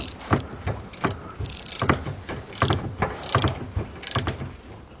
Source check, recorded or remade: recorded